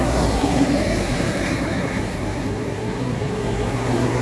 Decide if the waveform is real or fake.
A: fake